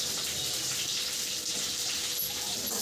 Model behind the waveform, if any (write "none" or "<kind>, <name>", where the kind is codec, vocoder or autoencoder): none